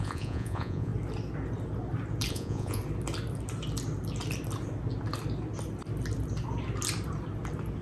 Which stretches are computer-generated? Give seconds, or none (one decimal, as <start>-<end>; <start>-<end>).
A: 0.0-0.9; 2.3-2.8